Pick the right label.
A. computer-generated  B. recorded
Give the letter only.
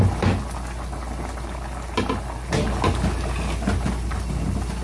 B